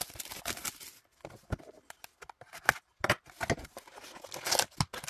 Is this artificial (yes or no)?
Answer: no